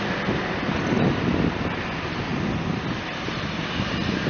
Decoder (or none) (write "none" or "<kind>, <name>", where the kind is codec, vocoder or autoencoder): none